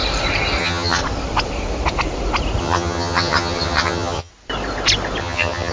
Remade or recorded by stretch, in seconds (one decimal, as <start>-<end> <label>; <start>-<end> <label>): 0.0-0.6 recorded; 0.6-1.0 remade; 1.0-2.6 recorded; 2.6-4.3 remade; 4.3-5.2 recorded; 5.2-5.7 remade